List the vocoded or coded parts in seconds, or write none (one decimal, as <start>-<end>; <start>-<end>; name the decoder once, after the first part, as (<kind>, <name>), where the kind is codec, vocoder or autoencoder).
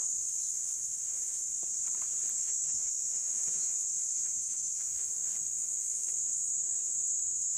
0.0-1.6 (autoencoder, DAC-VAE); 2.4-7.6